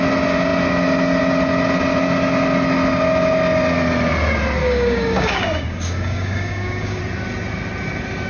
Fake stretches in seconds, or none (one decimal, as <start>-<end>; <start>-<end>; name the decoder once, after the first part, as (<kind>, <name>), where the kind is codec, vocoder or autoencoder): 4.6-7.0 (codec, DAC)